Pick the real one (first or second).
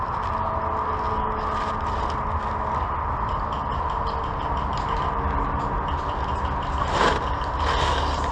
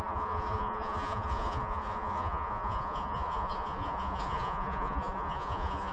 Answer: first